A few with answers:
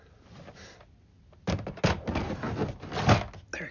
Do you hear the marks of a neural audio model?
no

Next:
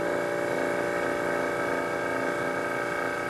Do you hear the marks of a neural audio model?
no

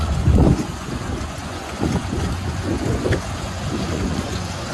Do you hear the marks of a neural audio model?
yes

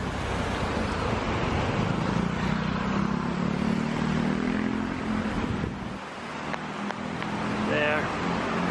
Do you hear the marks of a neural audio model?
no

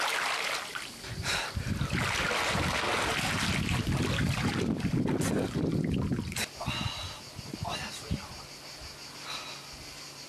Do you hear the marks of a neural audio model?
no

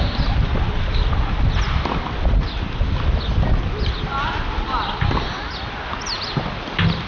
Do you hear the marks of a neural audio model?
no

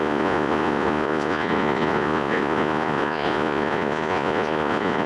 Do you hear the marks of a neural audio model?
yes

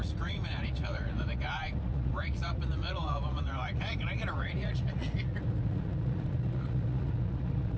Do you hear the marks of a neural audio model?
yes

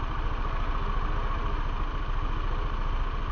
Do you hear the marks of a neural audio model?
no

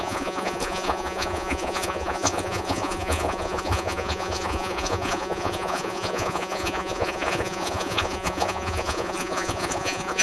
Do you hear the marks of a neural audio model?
yes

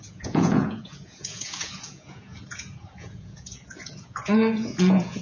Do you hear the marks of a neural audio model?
yes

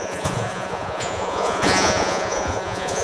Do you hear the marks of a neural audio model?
yes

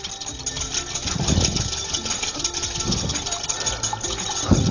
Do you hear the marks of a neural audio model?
no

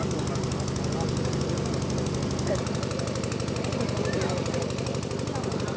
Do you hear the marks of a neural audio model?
no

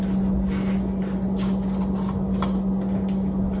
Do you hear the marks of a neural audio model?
no